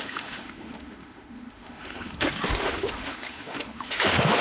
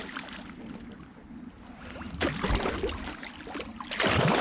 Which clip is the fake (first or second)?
first